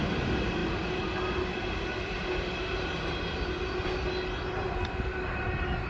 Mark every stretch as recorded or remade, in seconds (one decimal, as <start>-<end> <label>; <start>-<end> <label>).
0.0-5.9 recorded

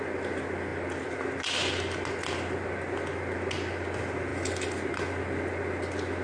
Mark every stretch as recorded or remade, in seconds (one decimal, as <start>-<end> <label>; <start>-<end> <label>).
0.0-6.2 recorded

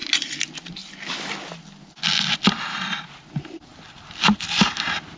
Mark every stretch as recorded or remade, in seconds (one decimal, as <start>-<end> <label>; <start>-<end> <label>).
0.0-5.2 recorded

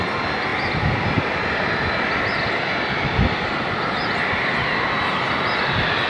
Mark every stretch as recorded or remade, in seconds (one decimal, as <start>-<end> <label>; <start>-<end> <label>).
0.0-6.1 recorded

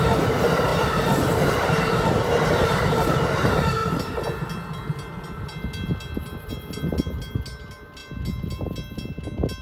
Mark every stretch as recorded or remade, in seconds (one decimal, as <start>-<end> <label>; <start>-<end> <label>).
0.0-9.6 recorded